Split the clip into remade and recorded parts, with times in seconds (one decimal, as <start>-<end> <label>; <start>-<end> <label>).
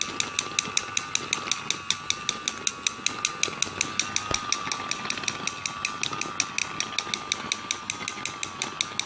0.0-9.1 recorded